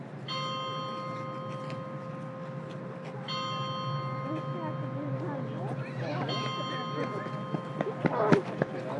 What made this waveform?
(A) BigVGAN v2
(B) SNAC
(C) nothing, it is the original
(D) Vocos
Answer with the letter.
C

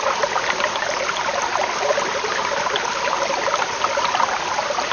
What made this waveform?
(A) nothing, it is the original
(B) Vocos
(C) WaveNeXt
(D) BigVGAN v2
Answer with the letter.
A